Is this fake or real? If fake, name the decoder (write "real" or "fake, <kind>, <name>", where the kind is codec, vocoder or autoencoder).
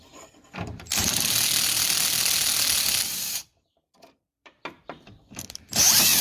fake, vocoder, BigVGAN v2